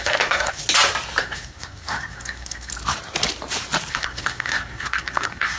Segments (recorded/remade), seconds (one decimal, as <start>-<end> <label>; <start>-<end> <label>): 0.0-0.6 remade; 0.6-1.2 recorded; 1.2-2.7 remade; 2.7-3.9 recorded; 3.9-5.6 remade